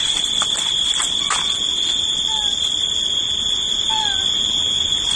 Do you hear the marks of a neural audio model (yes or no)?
yes